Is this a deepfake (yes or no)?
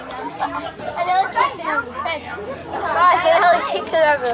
no